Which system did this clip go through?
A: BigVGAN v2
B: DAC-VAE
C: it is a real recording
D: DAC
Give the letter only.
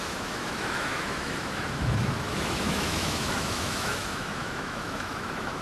B